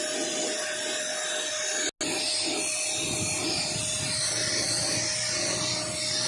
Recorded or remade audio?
recorded